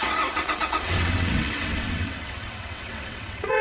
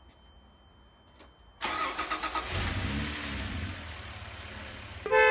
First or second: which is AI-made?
first